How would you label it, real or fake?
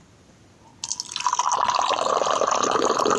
real